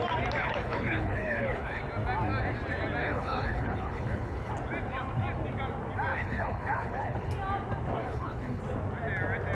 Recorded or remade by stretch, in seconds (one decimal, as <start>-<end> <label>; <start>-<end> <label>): 0.0-0.4 recorded; 0.4-1.8 remade; 1.8-3.0 recorded; 3.0-4.5 remade; 4.5-6.1 recorded; 6.1-7.3 remade; 7.3-8.0 recorded; 8.0-8.6 remade; 8.6-9.5 recorded